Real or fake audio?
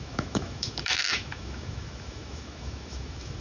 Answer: fake